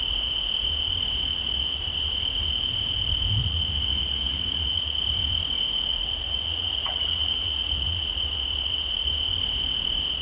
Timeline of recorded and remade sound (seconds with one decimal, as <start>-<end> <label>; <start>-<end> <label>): 0.0-1.3 recorded; 1.3-1.8 remade; 1.8-3.4 recorded; 3.4-5.0 remade; 5.0-5.9 recorded; 5.9-9.1 remade; 9.1-10.2 recorded